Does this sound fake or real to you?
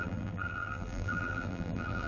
fake